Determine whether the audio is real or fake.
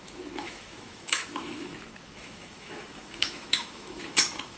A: fake